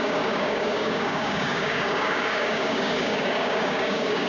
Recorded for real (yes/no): no